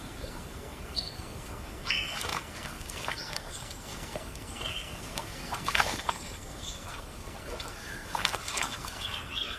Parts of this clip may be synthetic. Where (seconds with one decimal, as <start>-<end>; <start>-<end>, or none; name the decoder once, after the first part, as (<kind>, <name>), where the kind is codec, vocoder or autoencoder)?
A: 0.0-9.6 (codec, SNAC)